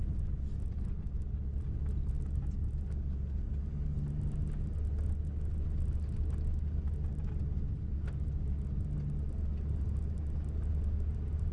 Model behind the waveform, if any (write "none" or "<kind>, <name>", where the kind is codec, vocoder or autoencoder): none